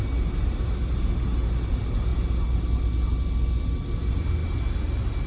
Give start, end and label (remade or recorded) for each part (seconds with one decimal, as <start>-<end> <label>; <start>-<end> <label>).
0.0-5.3 recorded